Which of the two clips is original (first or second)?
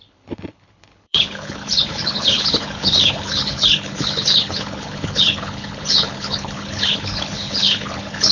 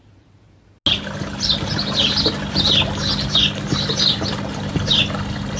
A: second